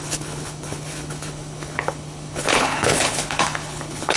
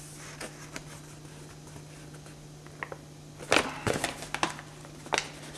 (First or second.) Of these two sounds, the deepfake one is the first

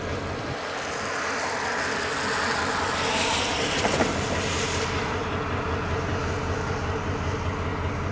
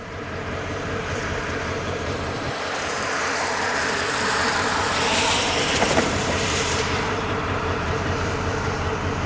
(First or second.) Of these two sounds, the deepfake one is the second